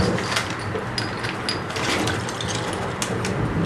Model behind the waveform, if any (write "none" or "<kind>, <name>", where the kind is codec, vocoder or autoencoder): none